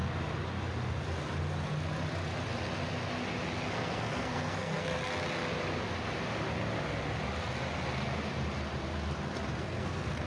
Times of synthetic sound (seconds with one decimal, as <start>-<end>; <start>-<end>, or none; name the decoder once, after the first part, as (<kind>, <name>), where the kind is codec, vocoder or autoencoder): 3.7-5.0 (codec, SNAC); 9.6-10.3